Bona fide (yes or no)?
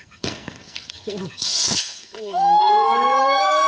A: no